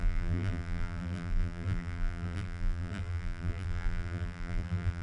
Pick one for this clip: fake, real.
fake